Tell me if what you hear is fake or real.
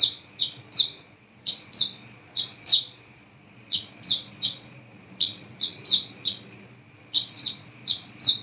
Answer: fake